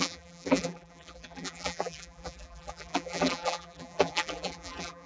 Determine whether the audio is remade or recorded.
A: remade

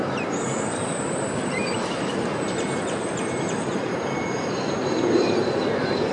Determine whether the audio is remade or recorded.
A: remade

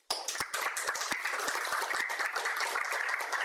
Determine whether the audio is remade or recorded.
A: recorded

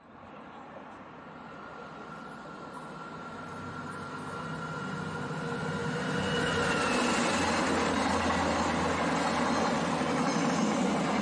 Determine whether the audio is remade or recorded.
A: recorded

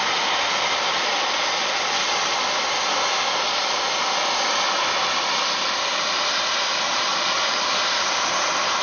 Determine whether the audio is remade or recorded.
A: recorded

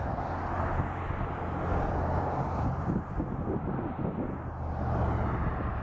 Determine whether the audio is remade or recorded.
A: recorded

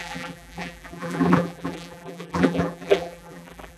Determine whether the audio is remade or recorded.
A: remade